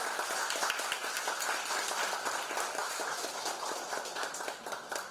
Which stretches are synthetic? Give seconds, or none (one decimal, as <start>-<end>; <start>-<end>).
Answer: 2.8-3.4

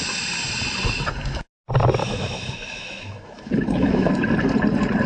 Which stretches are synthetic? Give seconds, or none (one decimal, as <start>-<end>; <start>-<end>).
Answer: 2.0-4.1